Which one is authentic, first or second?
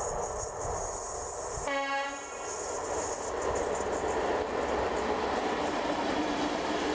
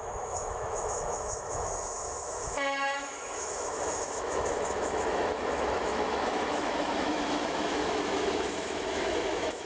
first